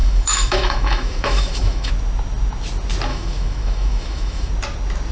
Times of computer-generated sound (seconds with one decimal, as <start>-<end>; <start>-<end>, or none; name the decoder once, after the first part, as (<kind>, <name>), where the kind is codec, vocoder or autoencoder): 0.0-1.9 (autoencoder, DAC-VAE); 3.1-4.5